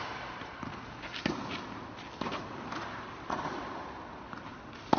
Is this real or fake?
real